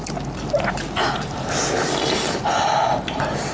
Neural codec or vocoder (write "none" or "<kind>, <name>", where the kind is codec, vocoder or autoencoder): none